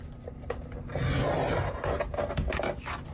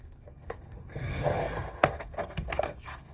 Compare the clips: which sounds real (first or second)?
first